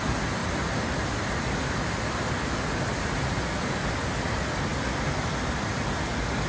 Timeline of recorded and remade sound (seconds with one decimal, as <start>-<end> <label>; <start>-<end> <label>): 0.0-6.5 recorded